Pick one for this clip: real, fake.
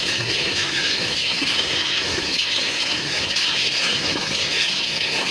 fake